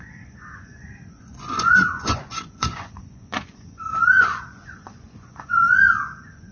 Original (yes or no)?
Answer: no